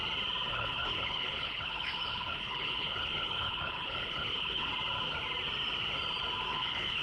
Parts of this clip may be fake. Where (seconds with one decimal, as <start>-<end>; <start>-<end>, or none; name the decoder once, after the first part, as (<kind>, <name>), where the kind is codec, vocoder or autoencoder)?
0.5-4.7 (codec, HILCodec); 6.5-7.0